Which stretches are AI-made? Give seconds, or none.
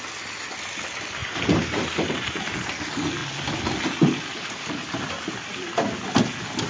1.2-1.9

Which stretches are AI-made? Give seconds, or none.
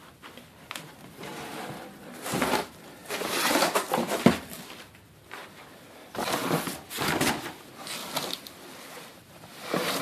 1.3-1.9; 3.0-4.9; 8.0-10.0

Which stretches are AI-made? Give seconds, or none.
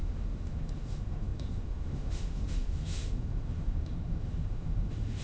0.0-5.2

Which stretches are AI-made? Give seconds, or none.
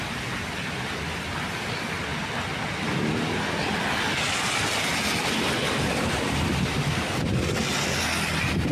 none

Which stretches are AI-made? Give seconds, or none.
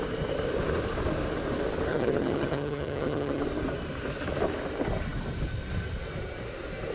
1.9-3.4